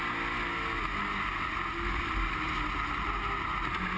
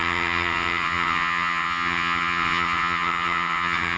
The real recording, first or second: first